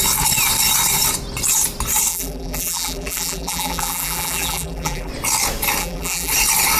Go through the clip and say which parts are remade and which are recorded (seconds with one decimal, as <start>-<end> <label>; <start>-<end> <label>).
0.0-2.1 recorded; 2.1-5.1 remade; 5.1-5.8 recorded; 5.8-6.3 remade; 6.3-6.8 recorded

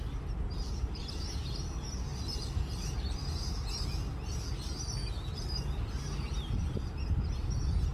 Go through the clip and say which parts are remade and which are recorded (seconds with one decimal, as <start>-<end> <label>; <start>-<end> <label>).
0.0-5.0 recorded; 5.0-6.9 remade; 6.9-7.9 recorded

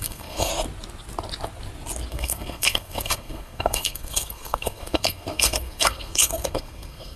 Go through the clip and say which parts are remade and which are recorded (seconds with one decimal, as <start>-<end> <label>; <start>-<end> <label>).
0.0-0.5 remade; 0.5-2.1 recorded; 2.1-7.2 remade